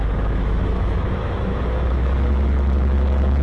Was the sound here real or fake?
fake